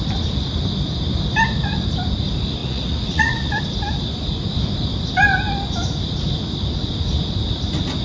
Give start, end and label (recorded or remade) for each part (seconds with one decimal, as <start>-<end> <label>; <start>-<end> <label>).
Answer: 0.0-2.6 recorded; 2.6-3.6 remade; 3.6-8.0 recorded